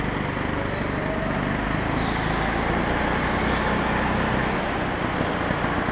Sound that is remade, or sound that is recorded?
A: recorded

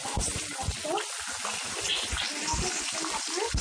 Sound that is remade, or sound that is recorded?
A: recorded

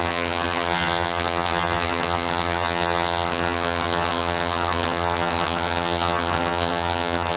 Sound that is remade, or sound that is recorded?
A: remade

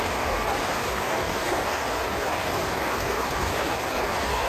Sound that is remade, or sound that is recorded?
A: remade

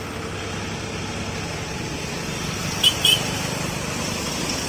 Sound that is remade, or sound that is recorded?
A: recorded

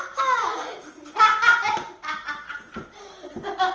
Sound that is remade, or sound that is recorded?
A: recorded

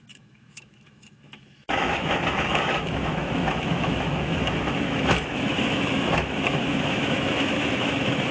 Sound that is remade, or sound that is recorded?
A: remade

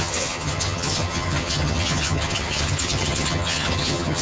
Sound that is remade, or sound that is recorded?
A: remade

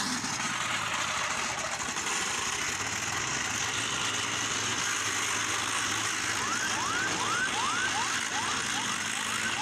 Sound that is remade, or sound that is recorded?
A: recorded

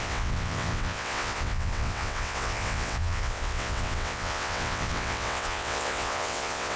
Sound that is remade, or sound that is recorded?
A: remade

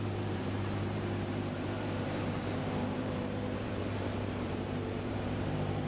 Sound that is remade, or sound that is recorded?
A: remade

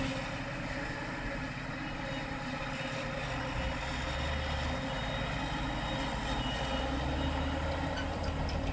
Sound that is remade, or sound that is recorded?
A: recorded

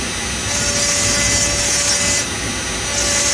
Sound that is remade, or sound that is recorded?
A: recorded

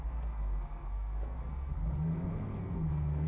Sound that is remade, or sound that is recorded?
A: remade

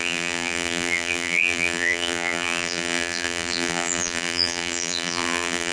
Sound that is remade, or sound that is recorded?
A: remade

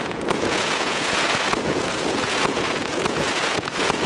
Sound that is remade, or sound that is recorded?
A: remade